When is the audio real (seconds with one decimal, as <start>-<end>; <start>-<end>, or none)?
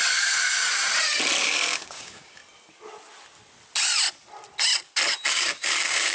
0.0-1.4; 2.4-5.3